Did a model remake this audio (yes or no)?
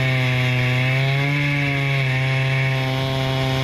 no